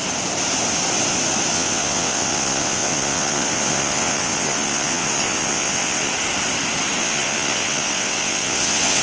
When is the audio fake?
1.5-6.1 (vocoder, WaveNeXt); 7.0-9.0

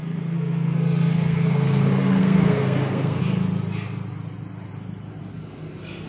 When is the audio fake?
0.0-3.2 (codec, SNAC)